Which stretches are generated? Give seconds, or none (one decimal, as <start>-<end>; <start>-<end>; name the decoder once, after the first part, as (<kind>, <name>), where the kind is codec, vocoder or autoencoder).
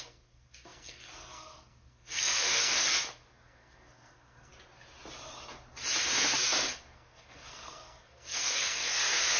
0.0-4.5 (codec, SNAC); 6.0-9.4